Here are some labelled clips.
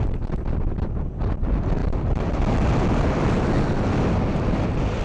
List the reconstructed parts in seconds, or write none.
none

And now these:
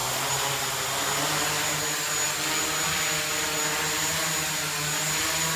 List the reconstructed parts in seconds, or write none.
none